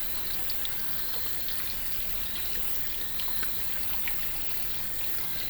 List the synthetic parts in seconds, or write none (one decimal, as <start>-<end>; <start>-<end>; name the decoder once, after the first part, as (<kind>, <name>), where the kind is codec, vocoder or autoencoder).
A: none